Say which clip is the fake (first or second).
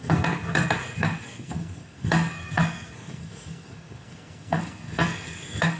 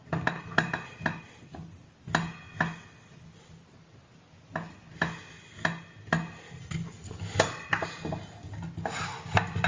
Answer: first